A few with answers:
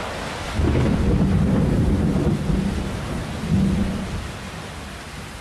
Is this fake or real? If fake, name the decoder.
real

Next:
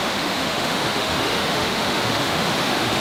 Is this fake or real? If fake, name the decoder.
fake, autoencoder, DAC-VAE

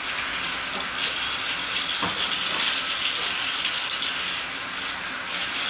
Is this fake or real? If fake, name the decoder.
real